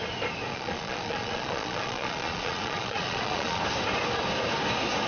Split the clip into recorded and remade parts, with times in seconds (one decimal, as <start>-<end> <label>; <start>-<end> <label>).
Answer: 0.0-0.5 recorded; 0.5-3.6 remade; 3.6-5.1 recorded